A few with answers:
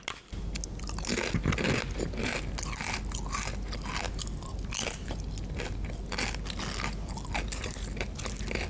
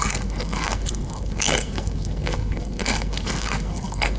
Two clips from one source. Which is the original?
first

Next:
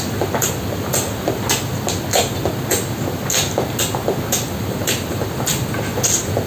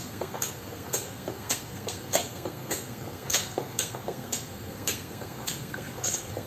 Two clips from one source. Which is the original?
first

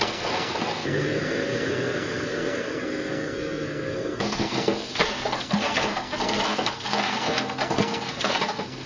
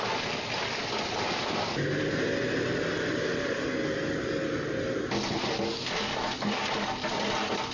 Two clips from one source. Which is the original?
second